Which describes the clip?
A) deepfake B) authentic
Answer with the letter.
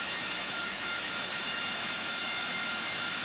A